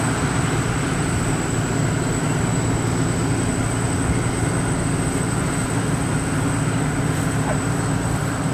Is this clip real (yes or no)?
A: yes